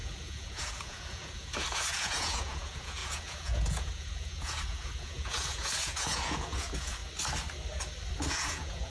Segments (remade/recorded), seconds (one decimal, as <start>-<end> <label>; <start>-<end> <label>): 0.0-7.0 remade; 7.0-8.3 recorded; 8.3-8.9 remade